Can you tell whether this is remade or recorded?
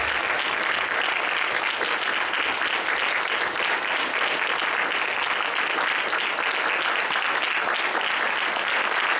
recorded